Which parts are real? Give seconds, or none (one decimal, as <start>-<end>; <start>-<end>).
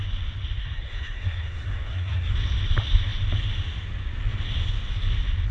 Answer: 0.0-0.6; 2.3-5.5